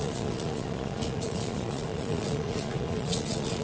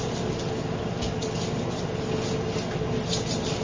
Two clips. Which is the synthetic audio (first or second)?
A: first